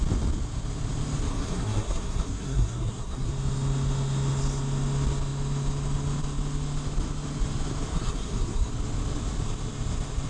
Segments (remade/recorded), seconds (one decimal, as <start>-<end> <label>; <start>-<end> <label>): 0.0-1.3 recorded; 1.3-3.3 remade; 3.3-7.9 recorded; 7.9-8.7 remade; 8.7-10.3 recorded